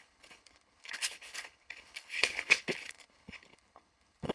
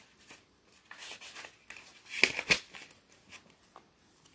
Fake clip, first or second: first